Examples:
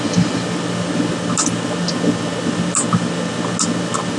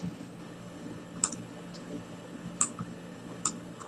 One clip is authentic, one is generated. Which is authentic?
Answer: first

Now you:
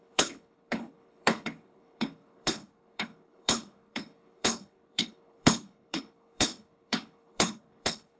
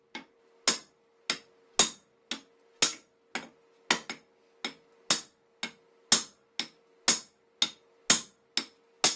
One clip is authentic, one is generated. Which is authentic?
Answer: second